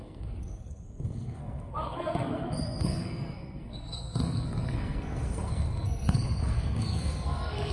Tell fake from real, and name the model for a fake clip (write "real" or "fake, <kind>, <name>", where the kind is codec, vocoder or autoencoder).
fake, codec, SNAC